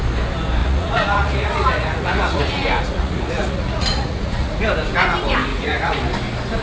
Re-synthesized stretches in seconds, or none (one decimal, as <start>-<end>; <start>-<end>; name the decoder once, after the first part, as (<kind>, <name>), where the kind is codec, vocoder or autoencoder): 0.6-4.6 (vocoder, Vocos); 5.5-6.1